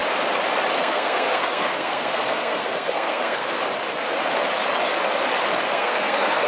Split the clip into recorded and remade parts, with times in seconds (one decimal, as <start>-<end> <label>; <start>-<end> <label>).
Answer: 0.0-0.8 recorded; 0.8-3.6 remade; 3.6-5.7 recorded; 5.7-6.5 remade